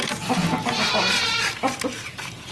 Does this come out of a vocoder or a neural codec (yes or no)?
no